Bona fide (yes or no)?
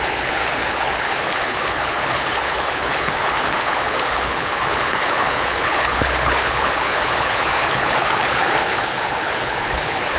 no